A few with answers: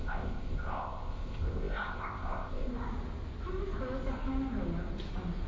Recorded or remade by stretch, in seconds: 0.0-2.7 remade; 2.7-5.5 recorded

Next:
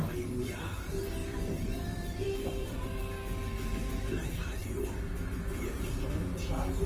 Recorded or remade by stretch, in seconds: 0.0-1.2 recorded; 1.2-3.0 remade; 3.0-6.9 recorded

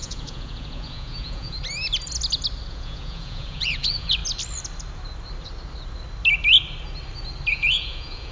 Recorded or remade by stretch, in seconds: 0.0-1.6 remade; 1.6-2.7 recorded; 2.7-4.2 remade; 4.2-7.5 recorded; 7.5-8.3 remade

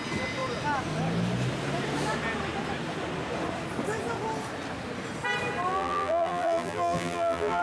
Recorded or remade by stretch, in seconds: 0.0-5.7 recorded; 5.7-7.6 remade

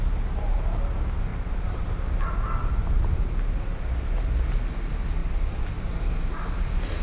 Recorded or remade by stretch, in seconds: 0.0-1.3 recorded; 1.3-2.0 remade; 2.0-5.2 recorded; 5.2-6.3 remade; 6.3-7.0 recorded

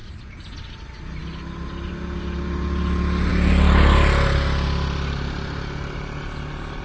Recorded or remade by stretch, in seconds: 0.0-6.8 recorded

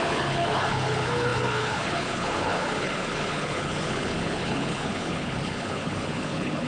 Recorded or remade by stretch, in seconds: 0.0-6.7 remade

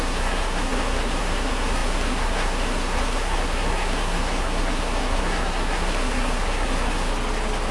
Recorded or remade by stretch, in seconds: 0.0-7.1 remade; 7.1-7.7 recorded